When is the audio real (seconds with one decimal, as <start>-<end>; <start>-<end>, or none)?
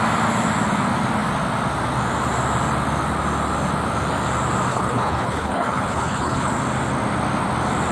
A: 0.0-4.7; 6.5-7.9